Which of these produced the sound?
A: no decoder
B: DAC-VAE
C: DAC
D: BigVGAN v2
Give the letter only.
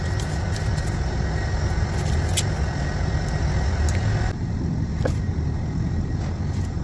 A